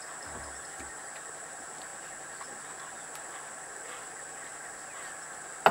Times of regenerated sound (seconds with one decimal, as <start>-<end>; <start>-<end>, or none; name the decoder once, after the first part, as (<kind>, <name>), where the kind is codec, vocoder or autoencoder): none